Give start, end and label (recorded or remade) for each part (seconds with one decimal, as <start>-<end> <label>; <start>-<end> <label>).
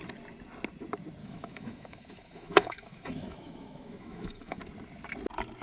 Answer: 0.0-1.2 recorded; 1.2-4.6 remade; 4.6-5.6 recorded